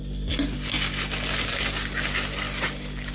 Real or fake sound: real